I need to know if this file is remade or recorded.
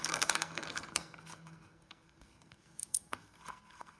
remade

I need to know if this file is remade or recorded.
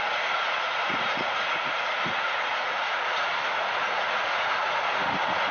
remade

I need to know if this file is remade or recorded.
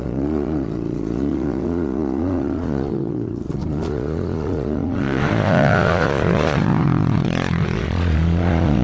remade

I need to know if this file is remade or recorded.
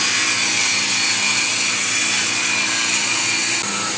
recorded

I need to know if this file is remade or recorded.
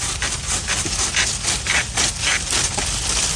recorded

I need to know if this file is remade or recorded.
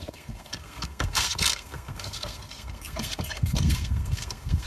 remade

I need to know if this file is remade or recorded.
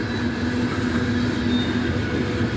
recorded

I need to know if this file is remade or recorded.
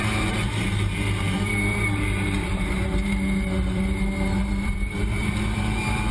remade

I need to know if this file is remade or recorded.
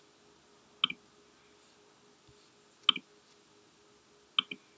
recorded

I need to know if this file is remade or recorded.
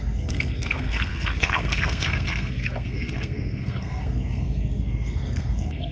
remade